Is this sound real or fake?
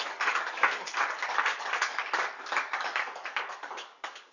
fake